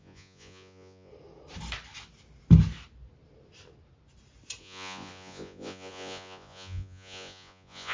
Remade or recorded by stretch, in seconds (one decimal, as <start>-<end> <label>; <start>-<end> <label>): 0.0-1.1 remade; 1.1-4.6 recorded; 4.6-7.9 remade